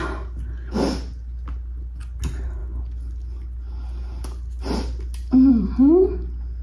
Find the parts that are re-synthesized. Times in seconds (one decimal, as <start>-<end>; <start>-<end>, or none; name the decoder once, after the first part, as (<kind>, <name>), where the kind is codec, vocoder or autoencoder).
none